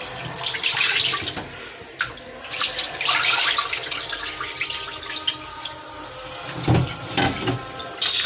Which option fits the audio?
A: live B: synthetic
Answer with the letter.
A